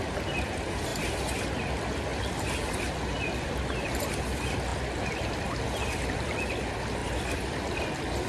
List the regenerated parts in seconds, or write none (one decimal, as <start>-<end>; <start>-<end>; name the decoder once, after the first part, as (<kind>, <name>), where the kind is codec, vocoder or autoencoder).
2.1-2.8 (vocoder, BigVGAN v2); 4.7-5.6; 7.0-7.8